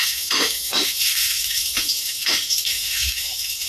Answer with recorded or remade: remade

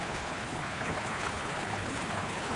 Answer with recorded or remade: remade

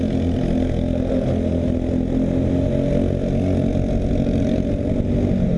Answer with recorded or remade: recorded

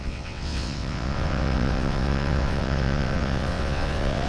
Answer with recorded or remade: remade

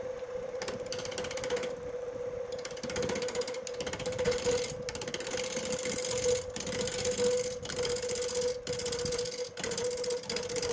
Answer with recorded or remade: recorded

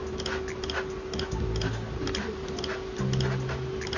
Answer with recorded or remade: recorded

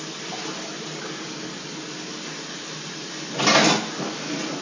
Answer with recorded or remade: recorded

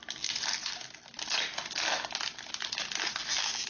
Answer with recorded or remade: recorded